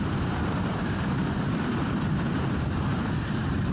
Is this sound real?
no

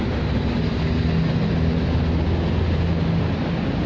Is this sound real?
yes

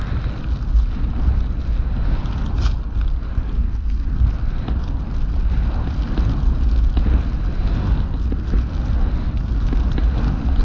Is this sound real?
yes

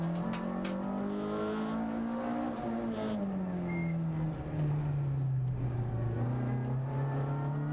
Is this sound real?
yes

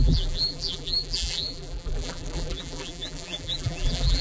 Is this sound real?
no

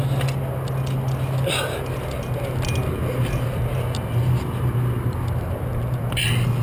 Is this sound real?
yes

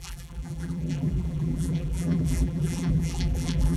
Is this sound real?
no